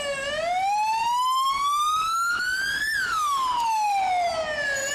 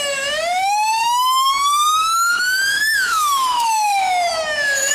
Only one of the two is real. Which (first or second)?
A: first